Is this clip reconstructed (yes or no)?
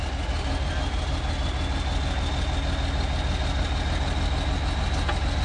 no